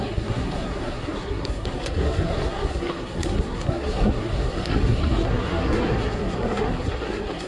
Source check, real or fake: fake